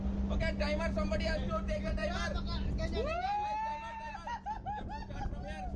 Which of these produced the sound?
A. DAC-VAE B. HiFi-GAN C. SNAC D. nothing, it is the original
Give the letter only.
D